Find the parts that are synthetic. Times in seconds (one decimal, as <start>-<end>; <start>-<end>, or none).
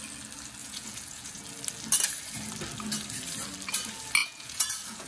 0.6-1.4; 4.2-5.1